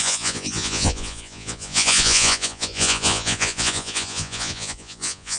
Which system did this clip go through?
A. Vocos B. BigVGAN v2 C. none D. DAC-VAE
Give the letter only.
A